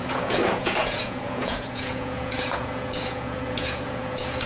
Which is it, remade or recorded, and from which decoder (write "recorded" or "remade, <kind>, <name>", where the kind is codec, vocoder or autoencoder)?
remade, vocoder, Vocos